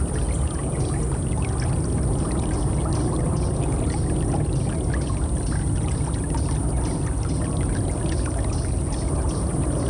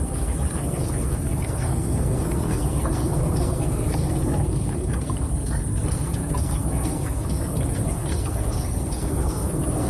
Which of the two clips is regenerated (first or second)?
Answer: second